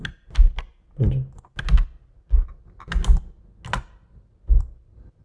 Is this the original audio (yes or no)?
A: yes